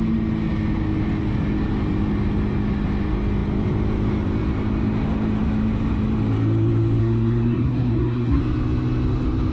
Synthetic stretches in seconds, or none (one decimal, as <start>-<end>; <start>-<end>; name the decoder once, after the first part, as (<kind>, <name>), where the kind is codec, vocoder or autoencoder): 7.0-8.4 (codec, SNAC)